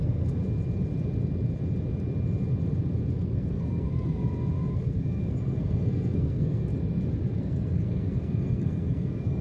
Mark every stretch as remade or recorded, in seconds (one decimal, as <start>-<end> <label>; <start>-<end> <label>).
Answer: 0.0-0.4 remade; 0.4-3.1 recorded; 3.1-4.2 remade; 4.2-4.7 recorded; 4.7-6.7 remade; 6.7-7.4 recorded; 7.4-9.4 remade